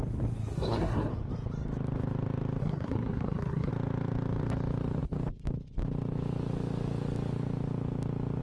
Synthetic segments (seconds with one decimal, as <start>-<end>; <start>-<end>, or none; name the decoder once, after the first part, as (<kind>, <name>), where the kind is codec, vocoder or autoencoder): 0.5-1.1 (codec, SNAC); 2.6-3.7